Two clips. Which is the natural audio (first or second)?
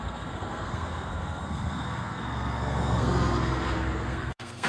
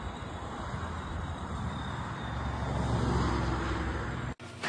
second